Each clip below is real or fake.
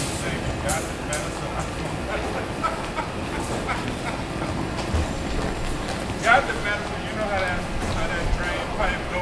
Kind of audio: real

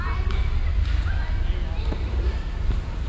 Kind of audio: real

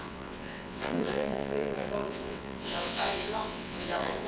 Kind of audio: fake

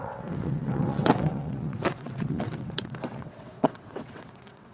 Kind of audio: fake